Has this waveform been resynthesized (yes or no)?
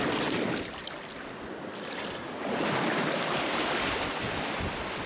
no